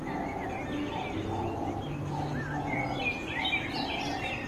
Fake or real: real